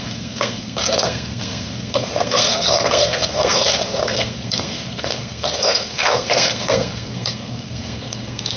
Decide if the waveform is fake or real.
fake